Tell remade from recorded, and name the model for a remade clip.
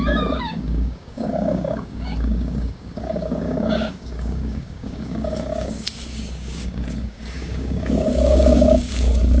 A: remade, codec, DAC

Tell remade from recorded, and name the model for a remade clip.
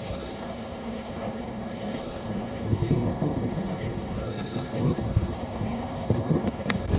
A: remade, codec, SNAC